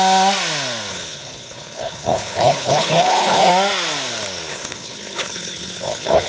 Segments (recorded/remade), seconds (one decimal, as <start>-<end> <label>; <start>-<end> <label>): 0.0-0.9 recorded; 0.9-3.5 remade; 3.5-4.5 recorded; 4.5-6.3 remade